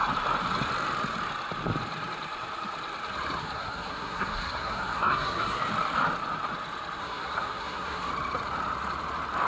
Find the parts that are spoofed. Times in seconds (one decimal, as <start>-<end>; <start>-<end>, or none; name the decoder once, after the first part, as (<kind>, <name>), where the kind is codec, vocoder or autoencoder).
3.4-5.6 (codec, SNAC); 7.0-8.1